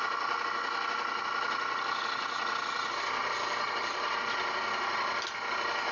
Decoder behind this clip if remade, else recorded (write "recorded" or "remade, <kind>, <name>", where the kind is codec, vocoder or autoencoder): remade, vocoder, BigVGAN v2